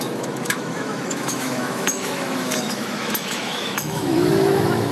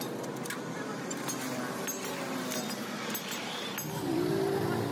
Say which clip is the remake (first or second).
first